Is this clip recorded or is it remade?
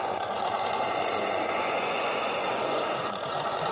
remade